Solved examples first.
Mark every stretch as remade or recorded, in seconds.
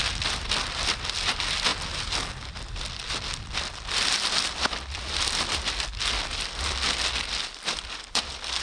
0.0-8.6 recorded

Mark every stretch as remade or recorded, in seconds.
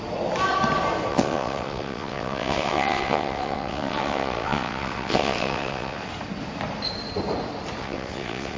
0.0-1.1 recorded; 1.1-6.1 remade; 6.1-7.8 recorded; 7.8-8.6 remade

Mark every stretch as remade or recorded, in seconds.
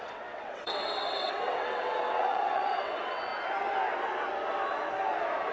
0.0-3.3 remade; 3.3-5.5 recorded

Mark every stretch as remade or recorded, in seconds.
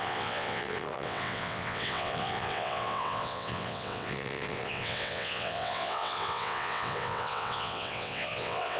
0.0-8.8 remade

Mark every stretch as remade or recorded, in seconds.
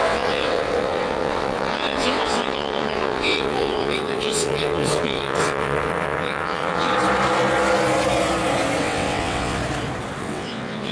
0.0-6.9 remade; 6.9-8.8 recorded; 8.8-9.6 remade; 9.6-10.2 recorded; 10.2-10.9 remade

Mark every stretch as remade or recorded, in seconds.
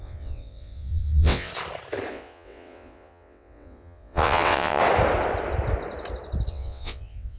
0.0-1.5 remade; 1.5-2.1 recorded; 2.1-4.8 remade; 4.8-6.5 recorded; 6.5-7.4 remade